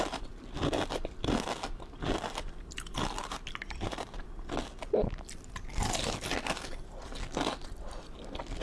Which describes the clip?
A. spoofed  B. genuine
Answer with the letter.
B